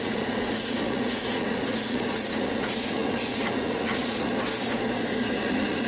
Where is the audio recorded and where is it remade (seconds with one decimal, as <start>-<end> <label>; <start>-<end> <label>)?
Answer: 0.0-4.3 remade; 4.3-5.2 recorded; 5.2-5.9 remade